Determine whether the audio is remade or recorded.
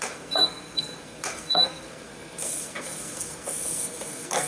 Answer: remade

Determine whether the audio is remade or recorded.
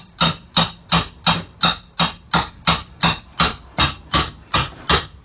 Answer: recorded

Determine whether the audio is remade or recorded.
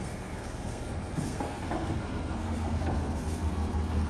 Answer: remade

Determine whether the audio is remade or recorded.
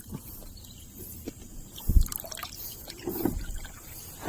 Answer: recorded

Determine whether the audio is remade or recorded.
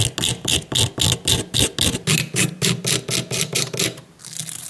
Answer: recorded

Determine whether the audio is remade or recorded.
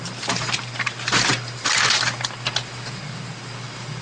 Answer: recorded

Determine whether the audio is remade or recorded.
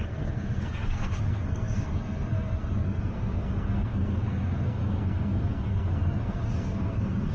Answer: remade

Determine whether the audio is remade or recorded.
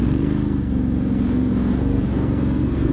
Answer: remade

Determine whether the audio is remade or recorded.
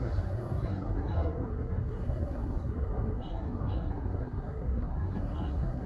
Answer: remade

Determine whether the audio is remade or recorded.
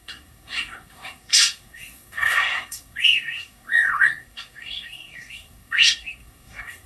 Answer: remade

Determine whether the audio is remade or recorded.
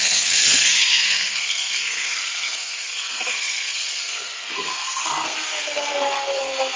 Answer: remade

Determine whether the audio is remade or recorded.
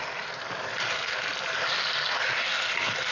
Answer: recorded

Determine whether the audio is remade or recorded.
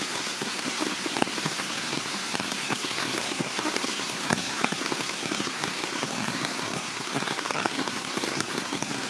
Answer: remade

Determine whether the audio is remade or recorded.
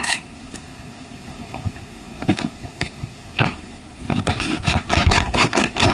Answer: remade